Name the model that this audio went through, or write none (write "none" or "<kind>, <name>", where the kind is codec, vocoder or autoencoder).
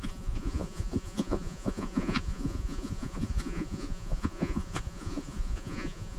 vocoder, Vocos